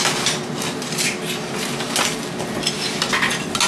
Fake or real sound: real